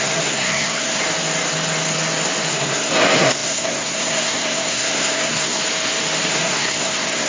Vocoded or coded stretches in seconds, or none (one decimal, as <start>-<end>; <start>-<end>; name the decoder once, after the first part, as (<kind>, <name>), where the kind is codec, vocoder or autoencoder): 0.0-1.0 (codec, SNAC); 2.5-5.6; 6.3-7.3